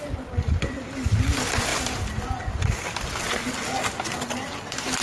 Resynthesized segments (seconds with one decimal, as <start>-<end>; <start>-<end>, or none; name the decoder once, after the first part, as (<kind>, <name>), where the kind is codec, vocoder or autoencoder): none